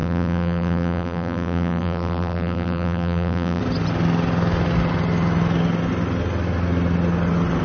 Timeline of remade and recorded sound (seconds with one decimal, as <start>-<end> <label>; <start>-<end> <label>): 0.0-3.6 remade; 3.6-7.6 recorded